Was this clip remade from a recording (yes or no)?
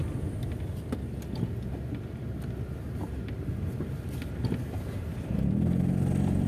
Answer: no